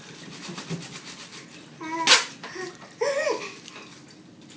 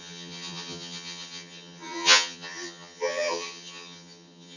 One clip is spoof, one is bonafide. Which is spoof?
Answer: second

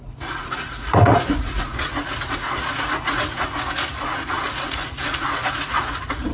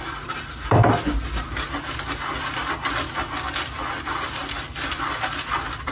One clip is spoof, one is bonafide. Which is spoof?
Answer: first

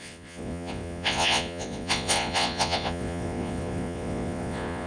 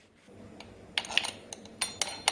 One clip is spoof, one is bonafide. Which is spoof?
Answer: first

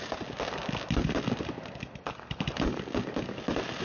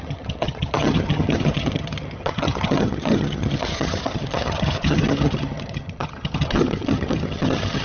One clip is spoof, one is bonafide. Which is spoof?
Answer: second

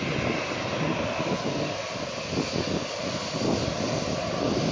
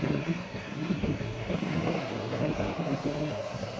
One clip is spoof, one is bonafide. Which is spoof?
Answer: second